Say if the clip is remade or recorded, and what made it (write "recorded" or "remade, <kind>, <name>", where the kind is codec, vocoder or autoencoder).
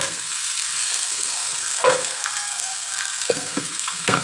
remade, codec, SNAC